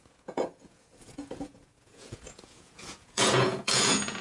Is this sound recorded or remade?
remade